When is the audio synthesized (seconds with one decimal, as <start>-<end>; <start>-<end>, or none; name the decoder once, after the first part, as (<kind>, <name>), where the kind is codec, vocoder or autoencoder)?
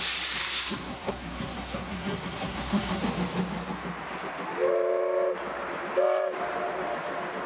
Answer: 0.4-3.0 (codec, SNAC)